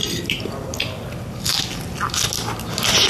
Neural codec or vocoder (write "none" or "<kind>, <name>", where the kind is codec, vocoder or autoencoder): none